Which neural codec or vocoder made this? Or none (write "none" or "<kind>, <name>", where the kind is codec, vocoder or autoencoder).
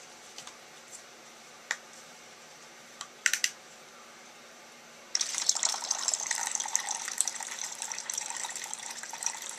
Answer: vocoder, BigVGAN v2